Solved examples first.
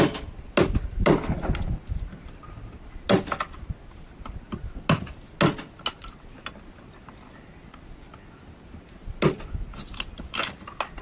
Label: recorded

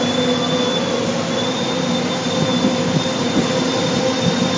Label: recorded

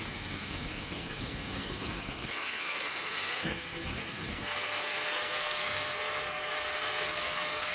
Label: remade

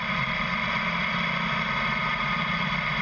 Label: recorded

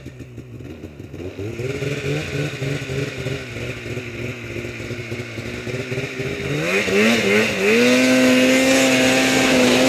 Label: recorded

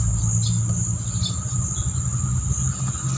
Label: recorded